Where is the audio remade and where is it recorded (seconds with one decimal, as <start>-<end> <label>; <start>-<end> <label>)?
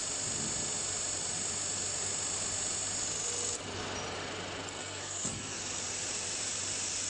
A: 0.0-4.8 recorded; 4.8-5.6 remade; 5.6-7.1 recorded